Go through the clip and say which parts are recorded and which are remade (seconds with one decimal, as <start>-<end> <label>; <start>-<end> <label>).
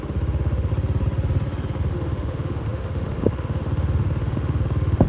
0.0-0.7 remade; 0.7-1.8 recorded; 1.8-5.1 remade